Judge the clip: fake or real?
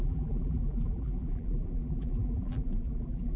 fake